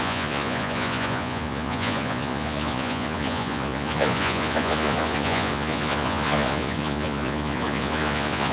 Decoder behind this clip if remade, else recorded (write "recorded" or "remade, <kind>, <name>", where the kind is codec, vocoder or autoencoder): remade, vocoder, Vocos